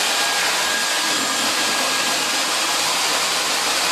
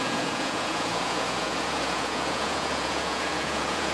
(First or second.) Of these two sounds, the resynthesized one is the second